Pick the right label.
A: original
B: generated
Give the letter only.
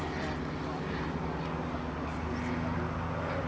A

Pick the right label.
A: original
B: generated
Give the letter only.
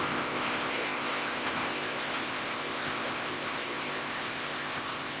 B